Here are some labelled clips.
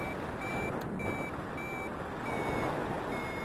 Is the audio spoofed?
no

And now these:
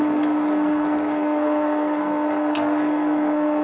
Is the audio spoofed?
yes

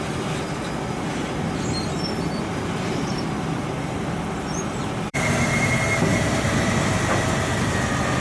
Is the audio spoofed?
yes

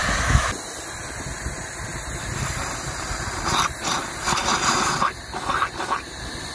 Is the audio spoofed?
no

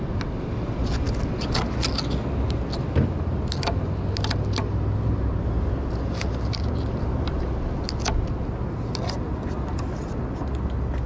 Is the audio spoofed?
no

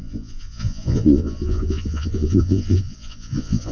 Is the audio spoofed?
yes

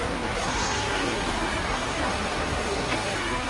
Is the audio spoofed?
yes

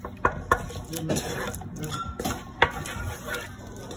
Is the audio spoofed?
no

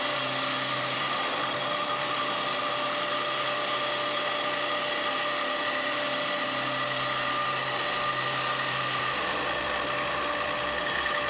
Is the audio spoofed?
no